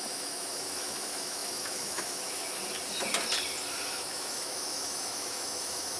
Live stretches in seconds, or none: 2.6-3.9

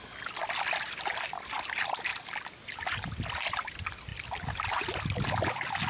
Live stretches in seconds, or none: 0.0-5.9

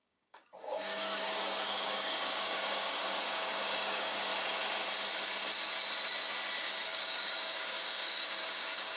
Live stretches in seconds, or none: 4.3-6.6